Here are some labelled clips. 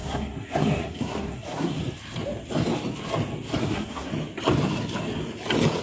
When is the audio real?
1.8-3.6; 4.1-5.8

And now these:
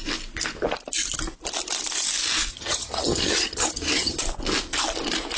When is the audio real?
0.0-2.5; 4.2-5.4

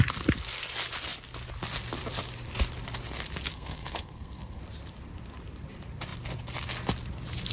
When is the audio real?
0.0-3.5; 4.6-7.5

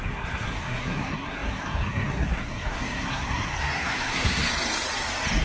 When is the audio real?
4.4-5.4